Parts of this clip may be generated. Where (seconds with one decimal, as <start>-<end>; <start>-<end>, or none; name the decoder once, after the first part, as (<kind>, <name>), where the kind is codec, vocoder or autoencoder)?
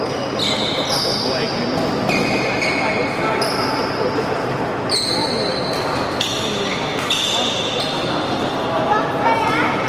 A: none